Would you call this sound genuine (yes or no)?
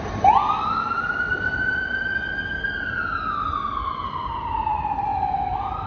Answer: yes